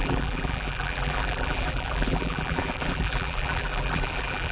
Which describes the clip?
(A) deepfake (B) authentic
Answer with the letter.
A